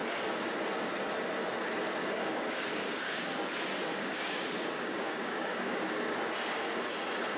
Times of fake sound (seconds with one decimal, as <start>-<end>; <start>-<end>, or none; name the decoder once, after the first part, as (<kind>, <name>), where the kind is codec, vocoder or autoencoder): 2.0-3.3 (codec, DAC); 3.8-6.2